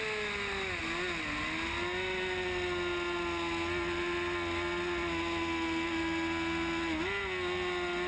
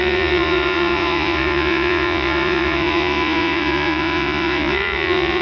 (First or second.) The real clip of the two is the first